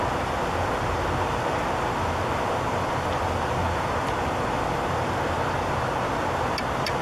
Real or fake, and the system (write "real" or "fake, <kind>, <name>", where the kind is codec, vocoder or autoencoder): real